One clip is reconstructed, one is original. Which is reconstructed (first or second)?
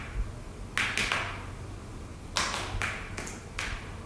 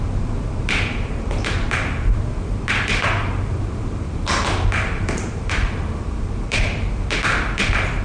second